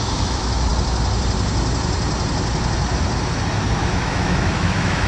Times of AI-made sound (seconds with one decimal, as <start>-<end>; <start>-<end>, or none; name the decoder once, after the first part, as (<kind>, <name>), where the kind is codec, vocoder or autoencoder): 0.0-0.7 (autoencoder, DAC-VAE); 3.8-5.1